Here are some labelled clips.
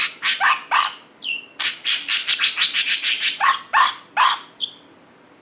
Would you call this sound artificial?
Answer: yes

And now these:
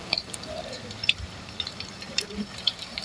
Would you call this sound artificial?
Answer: yes